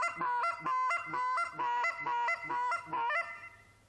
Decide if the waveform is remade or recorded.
recorded